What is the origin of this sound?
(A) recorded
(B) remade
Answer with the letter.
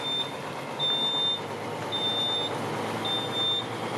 A